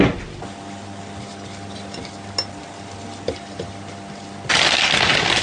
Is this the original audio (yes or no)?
yes